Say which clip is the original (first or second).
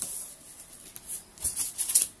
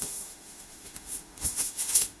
first